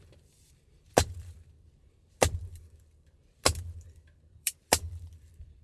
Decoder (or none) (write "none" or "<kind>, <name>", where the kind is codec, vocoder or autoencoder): vocoder, BigVGAN v2